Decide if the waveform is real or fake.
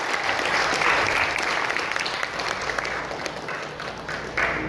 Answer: real